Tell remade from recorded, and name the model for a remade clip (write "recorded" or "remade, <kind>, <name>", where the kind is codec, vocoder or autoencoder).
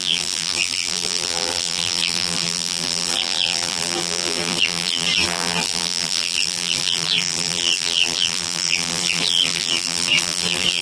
remade, vocoder, BigVGAN v2